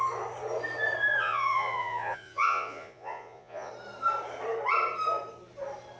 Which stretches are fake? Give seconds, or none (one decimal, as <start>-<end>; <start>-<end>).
1.2-3.7